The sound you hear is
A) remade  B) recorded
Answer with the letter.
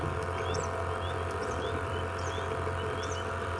B